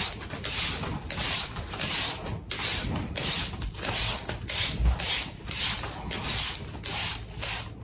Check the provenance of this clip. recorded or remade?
recorded